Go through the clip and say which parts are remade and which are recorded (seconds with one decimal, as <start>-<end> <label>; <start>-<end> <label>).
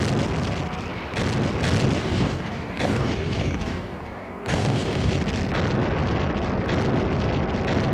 0.0-2.0 recorded; 2.0-5.1 remade; 5.1-7.9 recorded